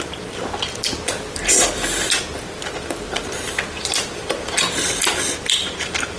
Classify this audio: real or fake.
real